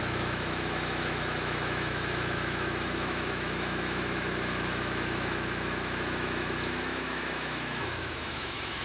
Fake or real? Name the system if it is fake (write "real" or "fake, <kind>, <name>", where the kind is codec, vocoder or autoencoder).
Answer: fake, autoencoder, DAC-VAE